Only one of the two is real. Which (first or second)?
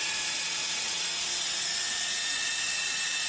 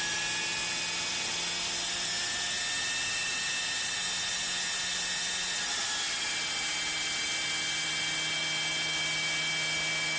second